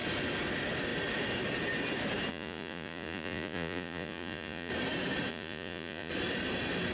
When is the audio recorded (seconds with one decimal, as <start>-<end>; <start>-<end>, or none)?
0.0-2.3; 4.7-5.3; 6.1-6.9